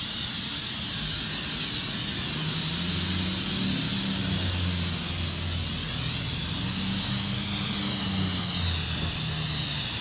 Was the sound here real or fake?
real